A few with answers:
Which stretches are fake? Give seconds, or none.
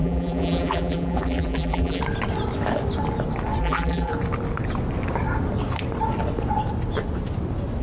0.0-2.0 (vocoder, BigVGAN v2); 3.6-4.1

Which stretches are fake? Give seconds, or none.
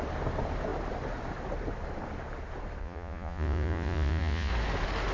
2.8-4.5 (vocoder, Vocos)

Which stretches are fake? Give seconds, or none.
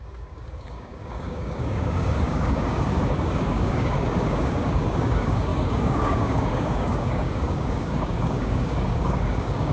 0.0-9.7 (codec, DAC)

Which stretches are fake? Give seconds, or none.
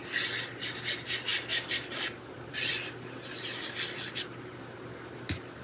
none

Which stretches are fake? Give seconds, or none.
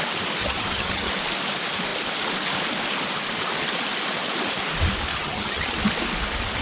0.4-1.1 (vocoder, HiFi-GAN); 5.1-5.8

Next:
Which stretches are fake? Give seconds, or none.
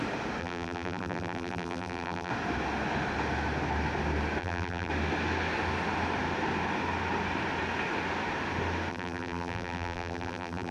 0.4-2.3 (vocoder, BigVGAN v2); 4.4-4.9; 8.9-10.7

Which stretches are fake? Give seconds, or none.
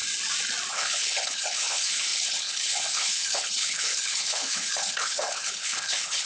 0.7-6.3 (codec, HILCodec)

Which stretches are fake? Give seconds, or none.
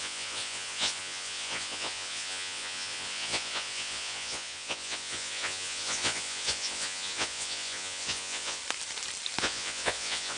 0.0-8.6 (vocoder, Vocos); 9.4-10.4